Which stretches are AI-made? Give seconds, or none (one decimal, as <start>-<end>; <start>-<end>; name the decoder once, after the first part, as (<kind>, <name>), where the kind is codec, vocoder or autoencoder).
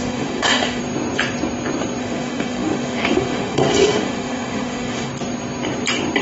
0.0-0.8 (autoencoder, DAC-VAE); 2.0-5.1